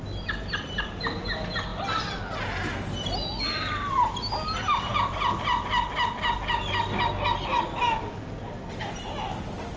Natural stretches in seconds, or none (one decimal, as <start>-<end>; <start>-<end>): 0.0-9.8